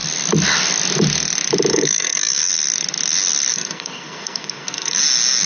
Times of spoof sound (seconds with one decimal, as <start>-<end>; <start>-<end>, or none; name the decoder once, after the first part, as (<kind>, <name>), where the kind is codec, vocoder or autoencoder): 1.7-2.5 (codec, SNAC); 3.5-5.0